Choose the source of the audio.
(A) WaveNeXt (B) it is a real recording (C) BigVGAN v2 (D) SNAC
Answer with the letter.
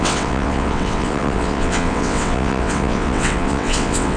A